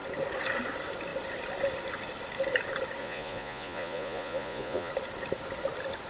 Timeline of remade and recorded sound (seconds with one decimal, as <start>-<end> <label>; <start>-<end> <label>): 0.0-3.0 recorded; 3.0-4.9 remade; 4.9-6.1 recorded